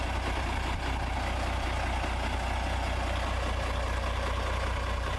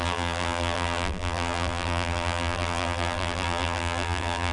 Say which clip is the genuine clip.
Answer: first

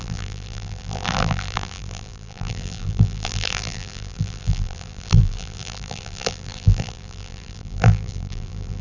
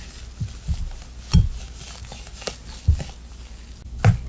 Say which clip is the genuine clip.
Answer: second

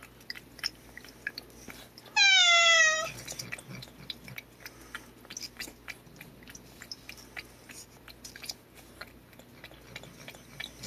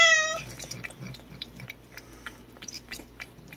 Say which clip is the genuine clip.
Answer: first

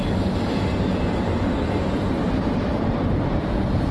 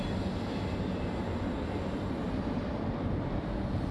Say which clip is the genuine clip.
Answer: second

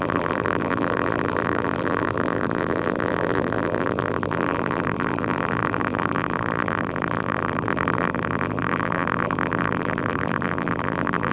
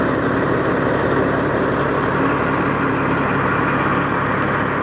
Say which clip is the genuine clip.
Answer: second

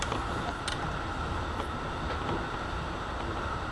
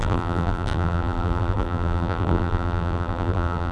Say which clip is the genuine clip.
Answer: first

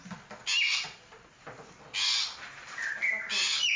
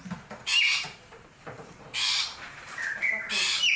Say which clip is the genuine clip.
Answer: first